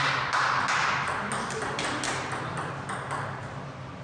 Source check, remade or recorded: recorded